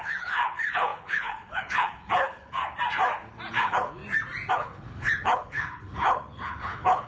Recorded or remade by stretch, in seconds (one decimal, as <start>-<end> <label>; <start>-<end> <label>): 0.0-2.6 remade; 2.6-3.5 recorded; 3.5-4.0 remade; 4.0-4.5 recorded; 4.5-7.1 remade